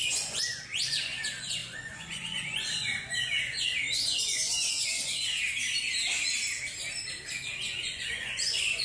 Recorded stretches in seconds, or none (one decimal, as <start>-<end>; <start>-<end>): 5.3-7.3